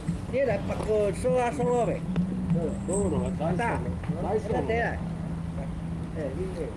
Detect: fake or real real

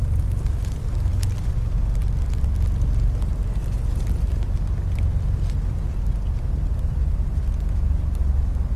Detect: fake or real real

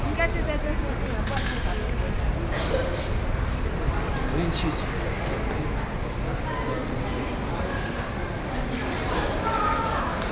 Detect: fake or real real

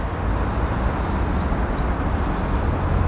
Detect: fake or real real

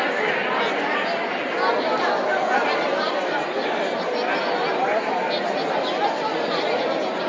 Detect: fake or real real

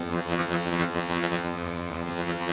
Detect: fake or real fake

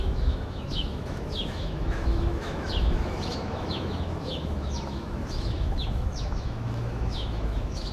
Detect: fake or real fake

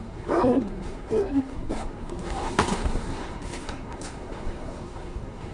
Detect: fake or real fake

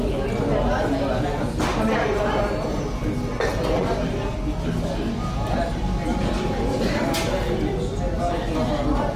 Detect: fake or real real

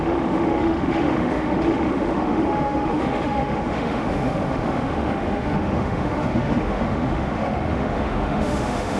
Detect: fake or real fake